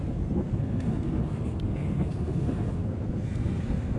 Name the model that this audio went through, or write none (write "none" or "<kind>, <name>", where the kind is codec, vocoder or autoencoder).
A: codec, SNAC